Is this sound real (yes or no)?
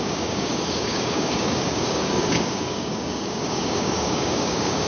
no